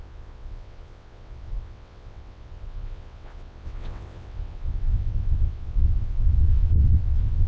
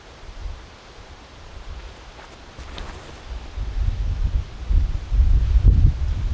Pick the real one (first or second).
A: second